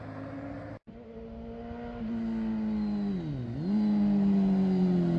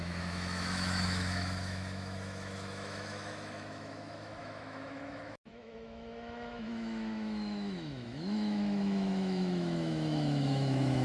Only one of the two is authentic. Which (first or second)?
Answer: first